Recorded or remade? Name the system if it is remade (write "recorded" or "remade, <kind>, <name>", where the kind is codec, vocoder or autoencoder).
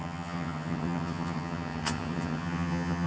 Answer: remade, vocoder, HiFi-GAN